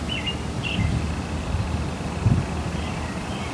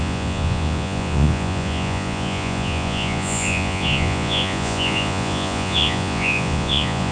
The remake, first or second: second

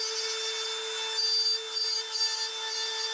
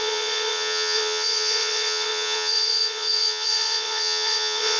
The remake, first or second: second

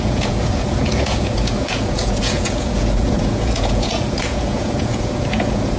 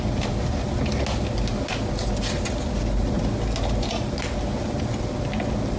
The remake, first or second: first